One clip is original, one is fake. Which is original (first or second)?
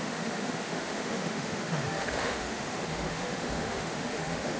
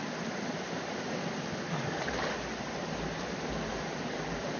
second